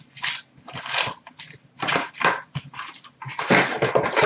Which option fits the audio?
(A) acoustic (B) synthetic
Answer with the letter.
A